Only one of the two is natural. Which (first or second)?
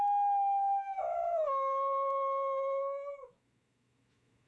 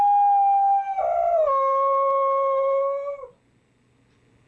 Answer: second